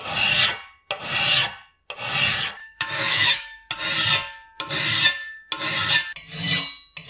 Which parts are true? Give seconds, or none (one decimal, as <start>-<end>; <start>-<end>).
0.0-2.6; 3.7-7.1